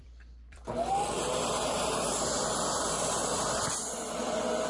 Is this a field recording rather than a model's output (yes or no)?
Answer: no